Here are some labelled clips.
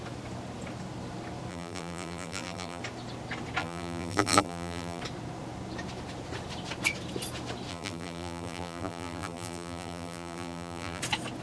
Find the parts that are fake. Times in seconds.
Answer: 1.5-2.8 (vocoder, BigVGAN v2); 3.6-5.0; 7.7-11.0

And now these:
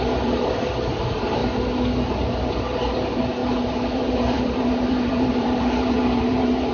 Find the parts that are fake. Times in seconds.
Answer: 0.0-1.4 (vocoder, BigVGAN v2); 2.1-6.7